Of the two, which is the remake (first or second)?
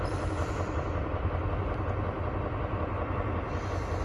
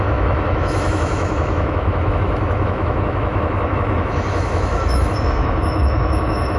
second